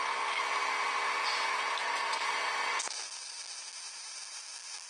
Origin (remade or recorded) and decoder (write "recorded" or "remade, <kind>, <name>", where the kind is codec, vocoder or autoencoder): recorded